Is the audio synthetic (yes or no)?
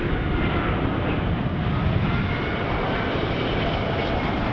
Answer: no